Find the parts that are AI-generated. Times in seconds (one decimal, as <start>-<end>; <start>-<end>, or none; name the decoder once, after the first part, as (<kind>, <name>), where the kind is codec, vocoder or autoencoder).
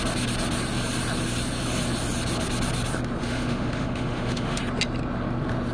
3.2-4.6 (autoencoder, DAC-VAE)